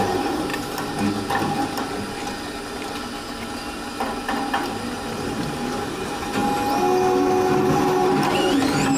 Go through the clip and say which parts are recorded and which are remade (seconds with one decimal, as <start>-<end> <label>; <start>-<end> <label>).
0.0-0.5 remade; 0.5-5.4 recorded; 5.4-6.4 remade; 6.4-8.1 recorded; 8.1-9.0 remade